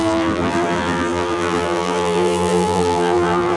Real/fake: fake